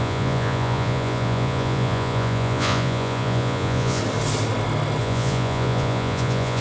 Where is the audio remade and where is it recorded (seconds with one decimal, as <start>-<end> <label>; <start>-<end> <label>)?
0.0-4.0 remade; 4.0-5.0 recorded; 5.0-6.6 remade

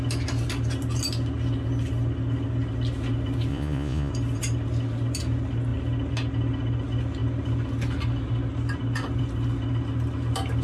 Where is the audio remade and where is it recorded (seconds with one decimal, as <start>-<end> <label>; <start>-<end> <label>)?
0.0-3.5 recorded; 3.5-4.1 remade; 4.1-10.6 recorded

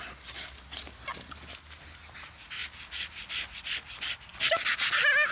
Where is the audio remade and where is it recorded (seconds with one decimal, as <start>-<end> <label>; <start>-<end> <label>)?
0.0-5.3 recorded